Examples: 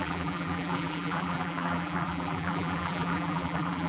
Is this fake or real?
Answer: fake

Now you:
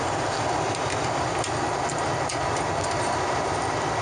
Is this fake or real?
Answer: real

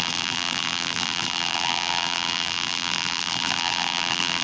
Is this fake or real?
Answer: fake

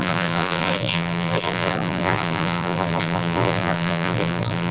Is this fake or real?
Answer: fake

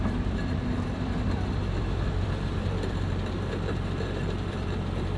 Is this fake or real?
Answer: fake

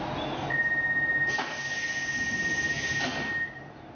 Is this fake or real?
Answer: real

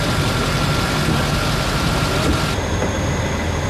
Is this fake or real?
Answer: real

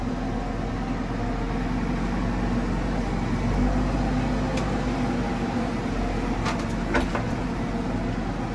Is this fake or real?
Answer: real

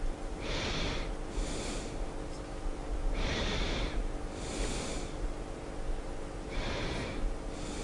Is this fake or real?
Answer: real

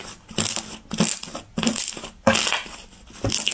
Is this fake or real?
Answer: real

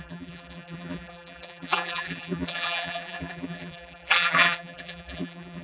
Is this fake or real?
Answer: fake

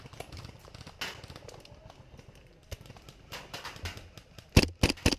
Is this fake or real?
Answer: real